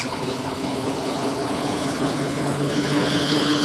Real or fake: fake